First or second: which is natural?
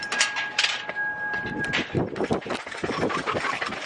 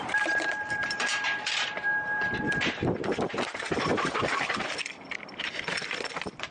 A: first